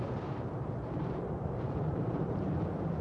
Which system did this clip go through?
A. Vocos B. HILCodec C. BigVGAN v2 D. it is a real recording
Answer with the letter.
C